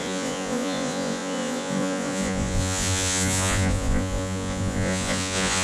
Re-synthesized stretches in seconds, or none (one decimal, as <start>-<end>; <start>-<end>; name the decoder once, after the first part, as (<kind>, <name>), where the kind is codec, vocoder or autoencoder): 0.0-5.6 (vocoder, Vocos)